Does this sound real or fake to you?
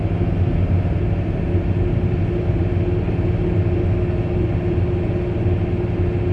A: real